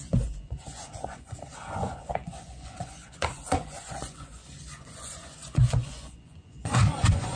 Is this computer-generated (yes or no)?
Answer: yes